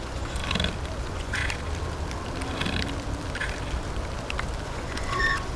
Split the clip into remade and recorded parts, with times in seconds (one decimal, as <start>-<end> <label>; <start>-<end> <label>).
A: 0.0-0.4 remade; 0.4-1.0 recorded; 1.0-1.4 remade; 1.4-4.6 recorded; 4.6-5.6 remade